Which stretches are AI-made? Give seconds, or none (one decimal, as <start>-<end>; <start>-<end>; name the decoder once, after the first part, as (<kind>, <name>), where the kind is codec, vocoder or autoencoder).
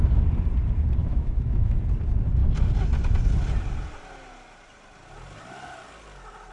1.0-1.8 (autoencoder, DAC-VAE)